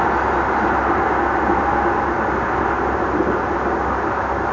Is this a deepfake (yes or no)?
no